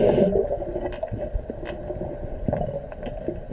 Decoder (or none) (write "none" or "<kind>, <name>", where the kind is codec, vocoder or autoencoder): none